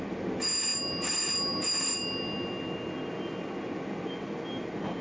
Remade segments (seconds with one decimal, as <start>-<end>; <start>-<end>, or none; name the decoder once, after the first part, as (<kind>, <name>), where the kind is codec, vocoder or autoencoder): none